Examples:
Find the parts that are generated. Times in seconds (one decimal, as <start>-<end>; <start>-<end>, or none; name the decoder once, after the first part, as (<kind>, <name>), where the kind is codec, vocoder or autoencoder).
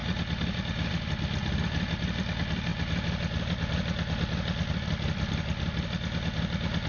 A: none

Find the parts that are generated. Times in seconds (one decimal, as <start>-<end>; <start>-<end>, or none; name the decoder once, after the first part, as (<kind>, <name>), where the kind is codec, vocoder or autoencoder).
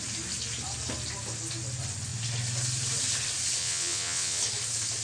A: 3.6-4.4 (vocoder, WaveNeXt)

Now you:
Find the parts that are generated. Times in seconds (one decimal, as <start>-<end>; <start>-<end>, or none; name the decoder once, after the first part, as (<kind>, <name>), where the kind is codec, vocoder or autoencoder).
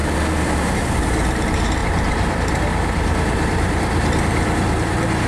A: 0.7-5.3 (vocoder, BigVGAN v2)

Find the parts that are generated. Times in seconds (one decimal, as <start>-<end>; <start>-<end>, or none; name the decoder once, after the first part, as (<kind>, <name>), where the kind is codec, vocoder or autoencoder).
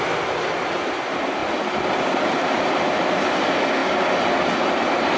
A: none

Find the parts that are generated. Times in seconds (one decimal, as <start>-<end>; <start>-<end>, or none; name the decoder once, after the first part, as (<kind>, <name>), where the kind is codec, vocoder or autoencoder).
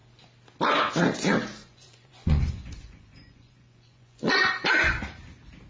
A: 1.6-5.0 (vocoder, Vocos)